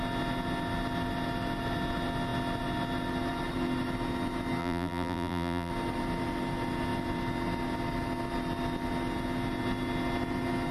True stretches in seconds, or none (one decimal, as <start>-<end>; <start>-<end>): 0.0-4.6; 5.7-10.7